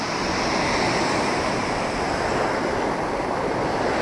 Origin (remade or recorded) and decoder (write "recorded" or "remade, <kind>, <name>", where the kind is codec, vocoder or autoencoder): recorded